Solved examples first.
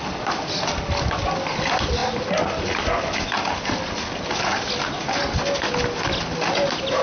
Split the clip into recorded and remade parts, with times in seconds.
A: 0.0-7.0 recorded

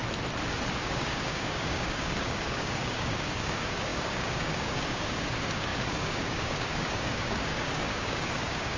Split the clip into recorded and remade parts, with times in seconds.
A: 0.0-0.8 recorded; 0.8-8.8 remade